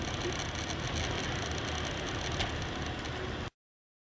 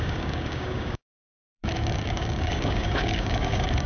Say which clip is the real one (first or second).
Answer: first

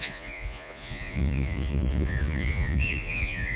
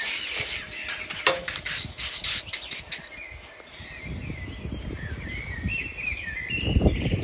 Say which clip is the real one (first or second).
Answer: second